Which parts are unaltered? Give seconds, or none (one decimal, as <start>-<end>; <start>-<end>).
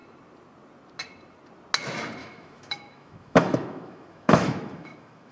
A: 0.0-2.2